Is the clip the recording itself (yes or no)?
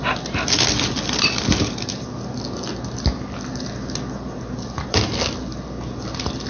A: yes